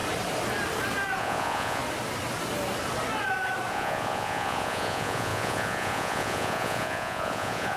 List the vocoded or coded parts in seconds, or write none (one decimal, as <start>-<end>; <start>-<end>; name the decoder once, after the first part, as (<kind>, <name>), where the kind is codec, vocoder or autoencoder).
1.2-1.8 (vocoder, Vocos); 3.7-7.8